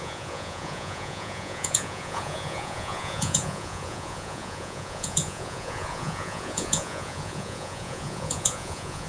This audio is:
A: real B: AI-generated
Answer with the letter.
B